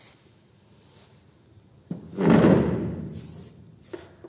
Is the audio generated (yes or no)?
no